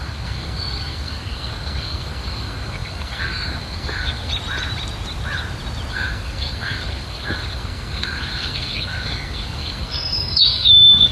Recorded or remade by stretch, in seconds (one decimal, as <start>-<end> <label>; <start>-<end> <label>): 0.0-4.3 remade; 4.3-5.9 recorded; 5.9-11.1 remade

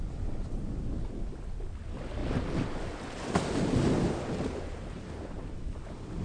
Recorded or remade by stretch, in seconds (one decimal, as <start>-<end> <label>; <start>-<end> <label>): 0.0-6.2 recorded